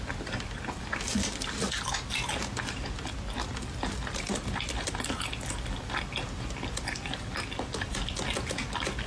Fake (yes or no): no